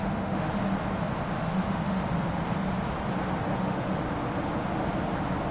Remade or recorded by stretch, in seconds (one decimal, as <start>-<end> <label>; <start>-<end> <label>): 0.0-0.5 remade; 0.5-1.4 recorded; 1.4-2.0 remade; 2.0-3.5 recorded; 3.5-4.0 remade; 4.0-5.5 recorded